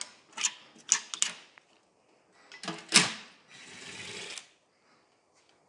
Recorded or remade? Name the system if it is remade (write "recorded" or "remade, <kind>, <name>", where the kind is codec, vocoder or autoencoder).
recorded